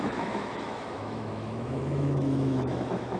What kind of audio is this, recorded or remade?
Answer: remade